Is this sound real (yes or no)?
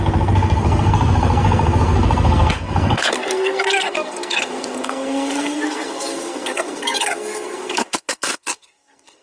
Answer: no